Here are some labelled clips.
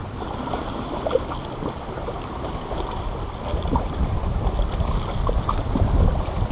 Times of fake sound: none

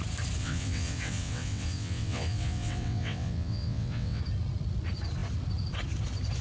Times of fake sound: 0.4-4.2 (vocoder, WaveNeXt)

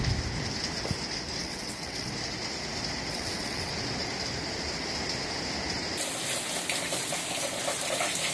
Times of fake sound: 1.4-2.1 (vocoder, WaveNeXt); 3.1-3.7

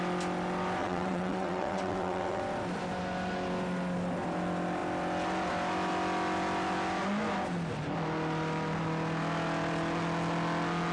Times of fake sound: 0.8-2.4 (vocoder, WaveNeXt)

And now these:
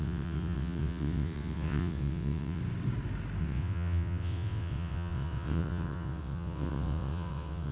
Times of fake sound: 0.0-2.6 (vocoder, WaveNeXt); 3.4-7.7

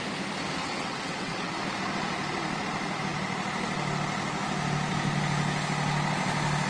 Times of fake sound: 0.6-1.5 (vocoder, WaveNeXt)

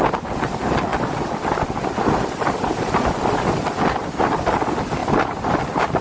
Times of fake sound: none